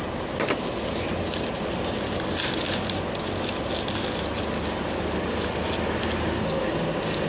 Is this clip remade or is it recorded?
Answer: recorded